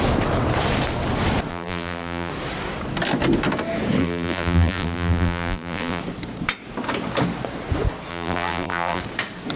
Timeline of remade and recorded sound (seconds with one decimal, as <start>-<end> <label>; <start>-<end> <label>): 0.0-1.5 recorded; 1.5-2.3 remade; 2.3-4.0 recorded; 4.0-6.0 remade; 6.0-8.1 recorded; 8.1-9.0 remade; 9.0-9.6 recorded

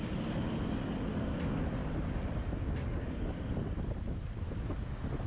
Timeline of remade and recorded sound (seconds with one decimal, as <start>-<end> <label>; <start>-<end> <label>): 0.0-5.3 recorded

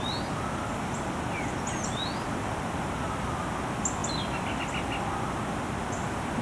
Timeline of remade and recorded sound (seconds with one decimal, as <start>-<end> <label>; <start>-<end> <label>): 0.0-6.4 recorded

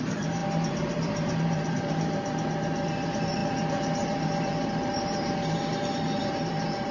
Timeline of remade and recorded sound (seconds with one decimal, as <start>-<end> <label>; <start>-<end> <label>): 0.0-6.9 remade

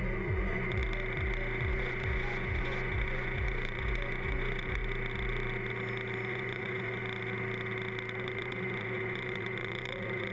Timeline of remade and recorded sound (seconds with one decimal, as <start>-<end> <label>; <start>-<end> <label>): 0.0-0.8 remade; 0.8-1.7 recorded; 1.7-4.8 remade; 4.8-6.3 recorded; 6.3-7.0 remade; 7.0-8.2 recorded; 8.2-10.3 remade